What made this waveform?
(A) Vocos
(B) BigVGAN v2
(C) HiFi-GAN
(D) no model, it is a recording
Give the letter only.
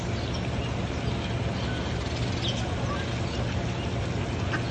D